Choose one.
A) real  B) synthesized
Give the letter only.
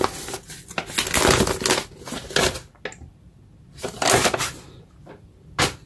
A